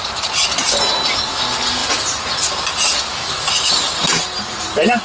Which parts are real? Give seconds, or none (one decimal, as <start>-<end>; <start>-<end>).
0.0-3.1; 3.7-5.0